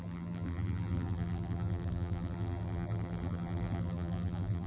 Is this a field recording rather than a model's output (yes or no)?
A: no